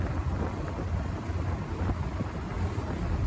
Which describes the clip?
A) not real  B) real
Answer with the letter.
B